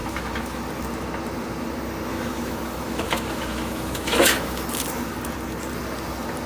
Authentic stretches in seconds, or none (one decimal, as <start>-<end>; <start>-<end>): 0.6-2.1; 4.6-6.5